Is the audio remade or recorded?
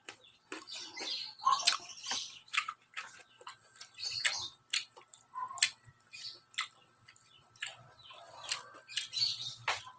remade